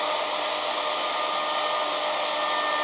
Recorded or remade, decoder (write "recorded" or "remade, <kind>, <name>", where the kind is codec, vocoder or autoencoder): recorded